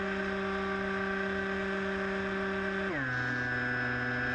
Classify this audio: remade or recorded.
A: recorded